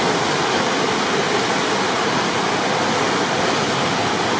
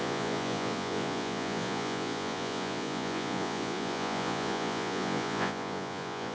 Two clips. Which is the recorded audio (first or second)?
first